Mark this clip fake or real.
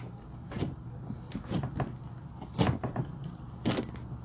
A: real